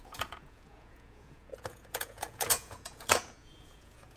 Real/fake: fake